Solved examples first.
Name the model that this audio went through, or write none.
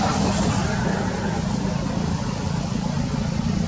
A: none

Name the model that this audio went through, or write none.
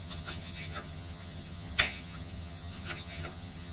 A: vocoder, HiFi-GAN